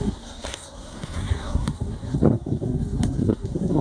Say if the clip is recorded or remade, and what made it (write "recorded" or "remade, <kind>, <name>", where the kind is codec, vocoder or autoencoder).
remade, codec, SNAC